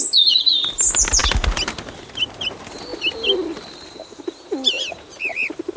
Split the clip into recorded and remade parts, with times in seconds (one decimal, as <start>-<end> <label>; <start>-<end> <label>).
0.0-5.8 recorded